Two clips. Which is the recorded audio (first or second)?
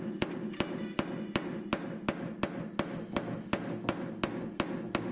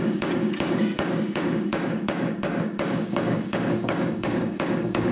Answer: first